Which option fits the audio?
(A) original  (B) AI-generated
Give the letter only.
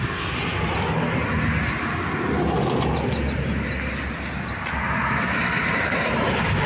A